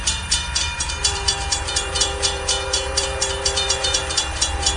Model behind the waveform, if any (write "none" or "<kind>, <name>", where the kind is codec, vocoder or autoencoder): vocoder, BigVGAN v2